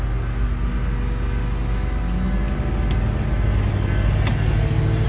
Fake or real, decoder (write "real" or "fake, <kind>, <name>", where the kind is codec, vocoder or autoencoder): real